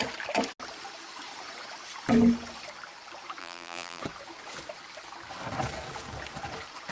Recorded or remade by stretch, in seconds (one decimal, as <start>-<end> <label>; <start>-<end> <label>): 0.0-3.4 recorded; 3.4-4.0 remade; 4.0-6.9 recorded